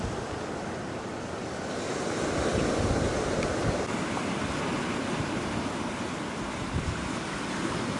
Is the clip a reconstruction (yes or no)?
no